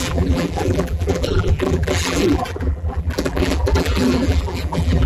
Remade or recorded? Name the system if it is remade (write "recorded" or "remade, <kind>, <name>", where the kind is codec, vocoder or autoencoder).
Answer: remade, vocoder, BigVGAN v2